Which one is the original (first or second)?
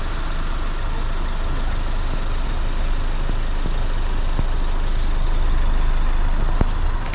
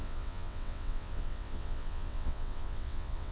first